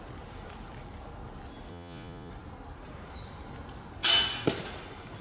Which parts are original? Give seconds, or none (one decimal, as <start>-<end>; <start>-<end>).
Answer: 0.0-1.7; 2.3-5.2